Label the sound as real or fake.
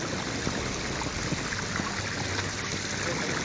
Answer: real